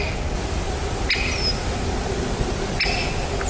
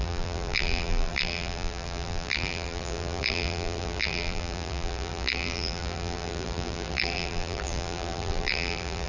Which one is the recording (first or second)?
first